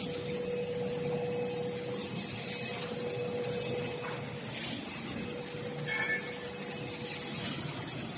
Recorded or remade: recorded